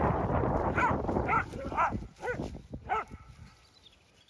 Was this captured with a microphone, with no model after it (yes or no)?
yes